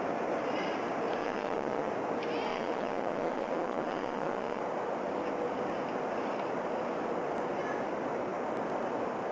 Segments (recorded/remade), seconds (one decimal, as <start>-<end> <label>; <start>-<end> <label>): 0.0-1.2 recorded; 1.2-1.9 remade; 1.9-2.5 recorded; 2.5-4.6 remade; 4.6-9.3 recorded